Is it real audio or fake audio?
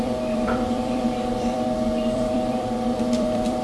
fake